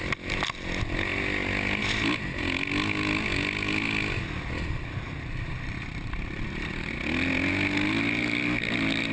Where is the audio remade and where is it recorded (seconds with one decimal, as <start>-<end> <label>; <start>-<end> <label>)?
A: 0.0-9.1 recorded